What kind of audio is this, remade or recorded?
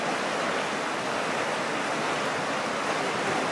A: recorded